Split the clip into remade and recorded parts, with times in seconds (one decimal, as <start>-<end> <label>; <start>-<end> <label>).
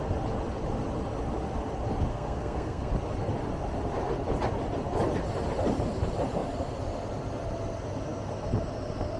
0.0-2.1 recorded; 2.1-2.9 remade; 2.9-9.2 recorded